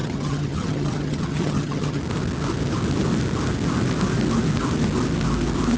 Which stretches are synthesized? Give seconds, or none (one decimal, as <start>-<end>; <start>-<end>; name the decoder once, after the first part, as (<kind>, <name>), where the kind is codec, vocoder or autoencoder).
0.0-2.0 (vocoder, HiFi-GAN)